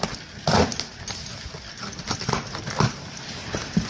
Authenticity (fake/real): real